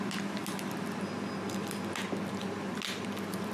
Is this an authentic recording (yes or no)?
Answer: yes